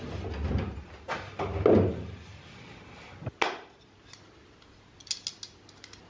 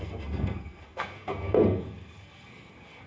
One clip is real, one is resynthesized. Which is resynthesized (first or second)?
second